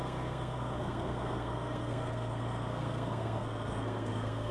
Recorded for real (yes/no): no